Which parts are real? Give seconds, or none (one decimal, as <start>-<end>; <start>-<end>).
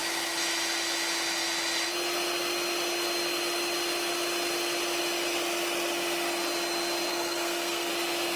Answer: 0.0-7.1; 7.9-8.4